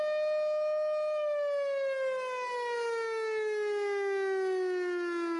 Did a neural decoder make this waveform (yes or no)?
no